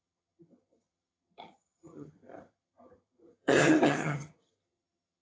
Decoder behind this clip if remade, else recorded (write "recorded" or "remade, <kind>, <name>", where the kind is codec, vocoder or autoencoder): remade, vocoder, HiFi-GAN